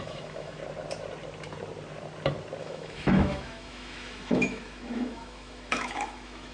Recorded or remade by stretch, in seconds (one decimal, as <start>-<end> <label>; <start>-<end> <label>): 0.0-0.6 remade; 0.6-2.6 recorded; 2.6-6.5 remade